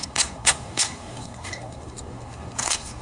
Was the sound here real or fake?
fake